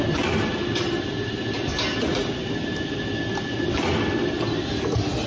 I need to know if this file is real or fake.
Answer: real